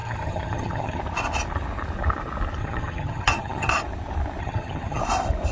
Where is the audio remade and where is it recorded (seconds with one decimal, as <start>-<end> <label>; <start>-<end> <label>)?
0.0-1.0 remade; 1.0-2.6 recorded; 2.6-3.7 remade; 3.7-4.4 recorded; 4.4-5.0 remade; 5.0-5.5 recorded